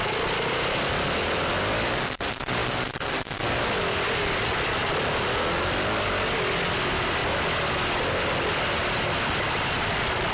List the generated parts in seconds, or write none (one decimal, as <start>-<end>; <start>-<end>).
none